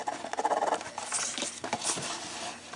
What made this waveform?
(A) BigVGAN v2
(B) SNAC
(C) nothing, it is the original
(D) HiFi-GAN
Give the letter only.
C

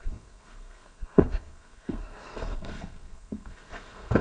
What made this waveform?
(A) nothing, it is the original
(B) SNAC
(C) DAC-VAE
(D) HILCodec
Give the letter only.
B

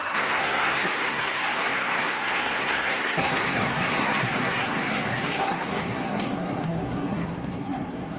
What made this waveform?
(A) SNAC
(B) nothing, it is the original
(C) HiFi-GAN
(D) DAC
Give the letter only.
A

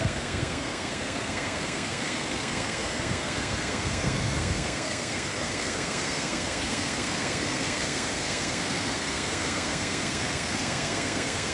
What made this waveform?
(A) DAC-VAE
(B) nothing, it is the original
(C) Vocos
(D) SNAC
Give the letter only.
D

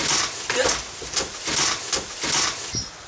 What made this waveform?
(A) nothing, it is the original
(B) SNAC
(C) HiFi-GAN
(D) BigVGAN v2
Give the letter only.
A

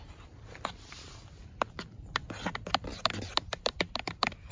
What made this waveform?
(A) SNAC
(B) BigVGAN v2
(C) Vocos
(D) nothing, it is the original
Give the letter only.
D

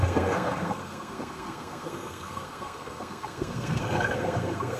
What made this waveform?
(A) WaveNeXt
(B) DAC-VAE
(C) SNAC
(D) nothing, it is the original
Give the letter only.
C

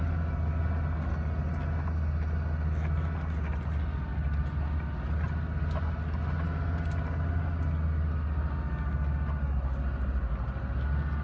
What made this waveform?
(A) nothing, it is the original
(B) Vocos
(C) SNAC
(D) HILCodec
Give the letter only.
A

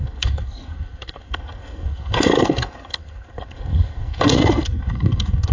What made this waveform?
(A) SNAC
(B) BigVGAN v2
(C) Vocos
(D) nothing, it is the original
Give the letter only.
A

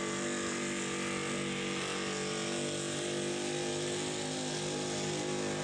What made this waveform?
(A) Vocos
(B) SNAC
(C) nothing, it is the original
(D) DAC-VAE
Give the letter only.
C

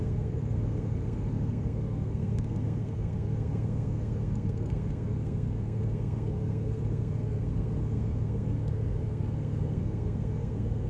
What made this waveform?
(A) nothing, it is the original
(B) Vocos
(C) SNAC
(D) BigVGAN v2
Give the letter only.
C